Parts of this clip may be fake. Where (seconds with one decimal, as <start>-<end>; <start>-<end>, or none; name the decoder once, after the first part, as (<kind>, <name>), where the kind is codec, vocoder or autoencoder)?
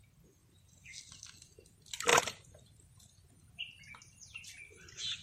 none